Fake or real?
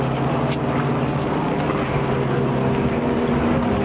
real